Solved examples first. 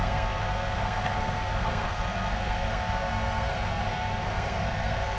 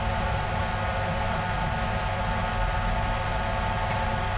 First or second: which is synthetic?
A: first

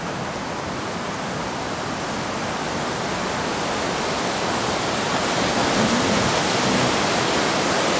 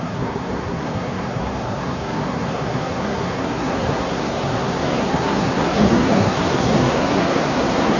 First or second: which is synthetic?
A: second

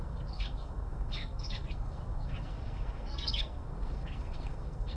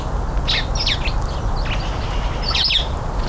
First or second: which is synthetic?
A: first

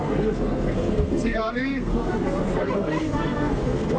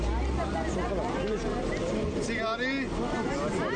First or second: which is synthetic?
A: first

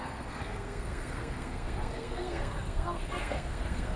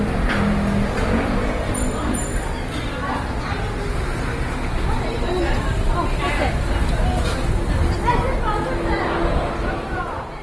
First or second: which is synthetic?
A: first